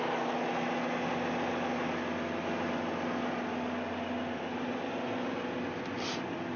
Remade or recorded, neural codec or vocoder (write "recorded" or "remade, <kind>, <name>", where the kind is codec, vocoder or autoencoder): recorded